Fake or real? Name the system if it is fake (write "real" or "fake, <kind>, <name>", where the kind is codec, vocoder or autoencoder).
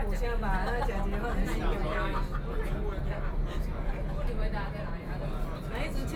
real